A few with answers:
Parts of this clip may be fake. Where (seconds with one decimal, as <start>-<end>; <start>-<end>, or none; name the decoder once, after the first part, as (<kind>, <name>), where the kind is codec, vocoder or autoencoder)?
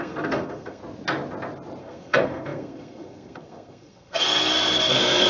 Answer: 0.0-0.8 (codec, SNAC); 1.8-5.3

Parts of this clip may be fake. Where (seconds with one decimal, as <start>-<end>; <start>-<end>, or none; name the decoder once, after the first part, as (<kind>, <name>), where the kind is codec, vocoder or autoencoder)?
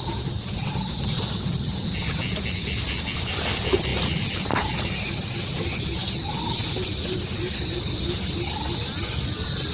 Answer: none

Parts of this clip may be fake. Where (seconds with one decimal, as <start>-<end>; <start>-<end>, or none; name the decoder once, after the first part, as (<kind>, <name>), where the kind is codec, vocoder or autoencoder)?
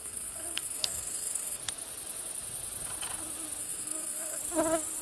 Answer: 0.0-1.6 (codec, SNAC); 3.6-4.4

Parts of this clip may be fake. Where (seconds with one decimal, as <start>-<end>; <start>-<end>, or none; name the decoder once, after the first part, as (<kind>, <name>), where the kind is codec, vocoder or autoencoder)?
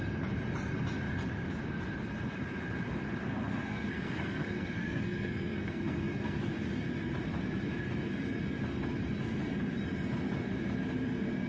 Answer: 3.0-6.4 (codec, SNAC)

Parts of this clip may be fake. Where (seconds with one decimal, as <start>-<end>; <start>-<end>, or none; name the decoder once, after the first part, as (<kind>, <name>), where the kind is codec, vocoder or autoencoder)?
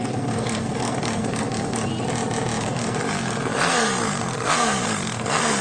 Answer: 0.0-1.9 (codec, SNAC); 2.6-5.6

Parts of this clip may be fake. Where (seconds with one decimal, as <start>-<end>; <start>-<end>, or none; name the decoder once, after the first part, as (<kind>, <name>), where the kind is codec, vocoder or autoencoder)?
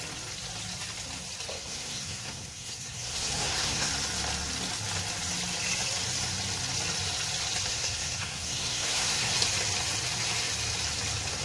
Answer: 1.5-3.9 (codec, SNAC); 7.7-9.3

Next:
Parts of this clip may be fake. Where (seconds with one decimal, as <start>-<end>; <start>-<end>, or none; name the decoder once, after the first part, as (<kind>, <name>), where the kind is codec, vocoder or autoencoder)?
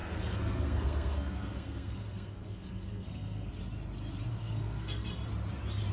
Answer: 0.0-3.5 (codec, SNAC); 4.3-5.1